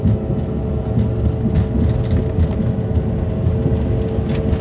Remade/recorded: recorded